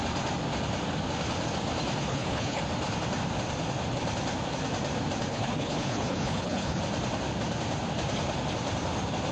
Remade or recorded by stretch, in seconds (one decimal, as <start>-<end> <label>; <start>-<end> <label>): 0.0-2.1 recorded; 2.1-2.6 remade; 2.6-5.3 recorded; 5.3-6.8 remade; 6.8-9.3 recorded